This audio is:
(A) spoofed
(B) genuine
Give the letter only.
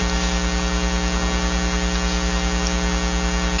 B